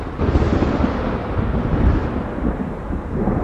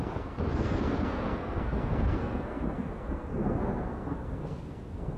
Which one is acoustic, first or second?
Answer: first